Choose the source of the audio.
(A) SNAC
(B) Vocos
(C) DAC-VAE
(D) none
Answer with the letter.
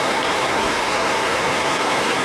A